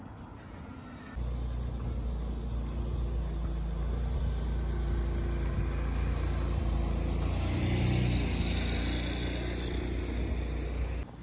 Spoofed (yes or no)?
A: no